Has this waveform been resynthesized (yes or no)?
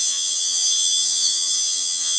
yes